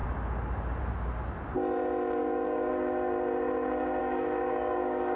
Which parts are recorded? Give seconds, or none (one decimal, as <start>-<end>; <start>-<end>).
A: 0.0-2.2; 2.7-4.0